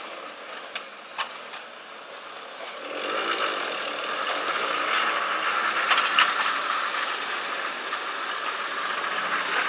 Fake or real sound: real